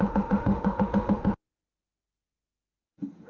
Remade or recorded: remade